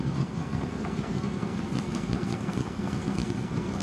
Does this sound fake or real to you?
fake